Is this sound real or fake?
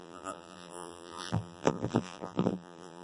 fake